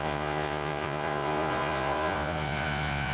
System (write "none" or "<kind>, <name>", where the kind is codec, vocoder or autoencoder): vocoder, Vocos